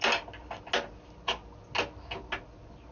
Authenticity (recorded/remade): recorded